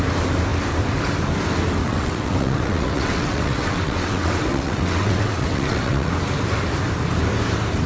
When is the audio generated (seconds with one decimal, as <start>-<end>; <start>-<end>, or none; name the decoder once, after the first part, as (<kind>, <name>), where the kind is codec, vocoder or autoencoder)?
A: 1.8-6.1 (vocoder, WaveNeXt)